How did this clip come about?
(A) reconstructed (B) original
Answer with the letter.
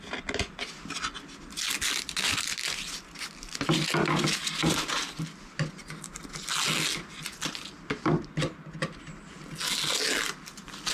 B